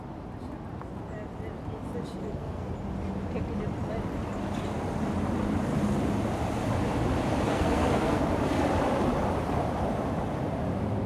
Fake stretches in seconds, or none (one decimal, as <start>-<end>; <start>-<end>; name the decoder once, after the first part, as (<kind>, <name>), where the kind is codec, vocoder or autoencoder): 2.2-2.7 (codec, SNAC); 7.5-8.2